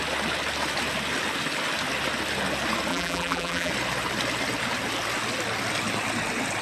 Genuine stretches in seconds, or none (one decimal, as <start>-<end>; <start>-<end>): 0.0-2.9; 3.7-6.6